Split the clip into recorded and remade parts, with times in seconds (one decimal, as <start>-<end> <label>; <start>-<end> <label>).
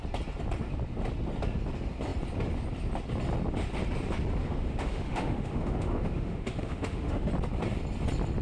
0.0-4.4 recorded; 4.4-7.3 remade; 7.3-8.4 recorded